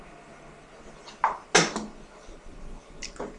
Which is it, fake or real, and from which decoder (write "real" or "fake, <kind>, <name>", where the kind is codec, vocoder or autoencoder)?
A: real